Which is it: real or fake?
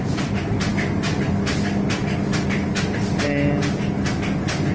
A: real